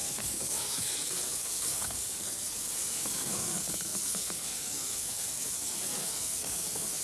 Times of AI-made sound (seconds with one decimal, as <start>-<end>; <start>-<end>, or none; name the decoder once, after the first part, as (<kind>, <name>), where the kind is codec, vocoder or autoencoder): 0.0-7.0 (codec, SNAC)